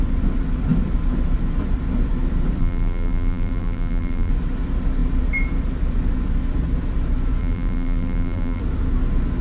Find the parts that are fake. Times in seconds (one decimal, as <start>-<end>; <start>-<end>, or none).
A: 2.6-4.3; 7.4-8.6